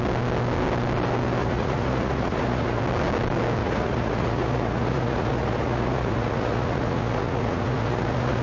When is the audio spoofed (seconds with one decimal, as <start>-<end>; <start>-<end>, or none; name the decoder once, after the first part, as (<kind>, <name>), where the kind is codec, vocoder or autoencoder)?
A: 1.4-2.8 (vocoder, Vocos); 3.6-8.4